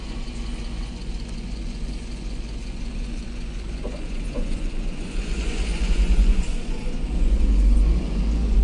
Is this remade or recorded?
remade